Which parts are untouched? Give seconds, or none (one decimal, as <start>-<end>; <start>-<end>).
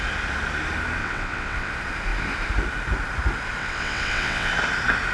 0.0-1.0; 1.7-3.6; 4.5-5.1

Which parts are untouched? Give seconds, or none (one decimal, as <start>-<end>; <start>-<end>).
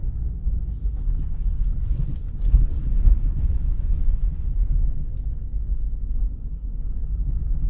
0.0-7.7